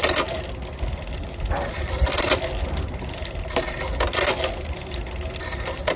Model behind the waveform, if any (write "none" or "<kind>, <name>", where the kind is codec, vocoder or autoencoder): none